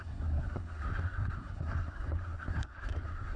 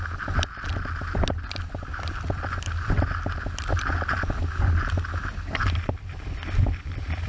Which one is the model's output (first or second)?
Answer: first